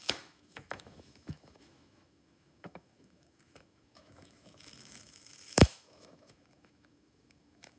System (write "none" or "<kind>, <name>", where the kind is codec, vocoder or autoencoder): autoencoder, DAC-VAE